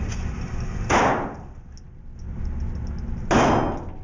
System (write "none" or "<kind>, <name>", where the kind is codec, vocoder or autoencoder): none